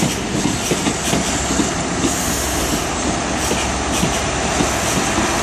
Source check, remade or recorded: recorded